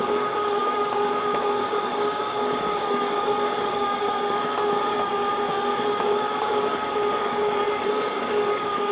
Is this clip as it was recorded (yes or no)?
no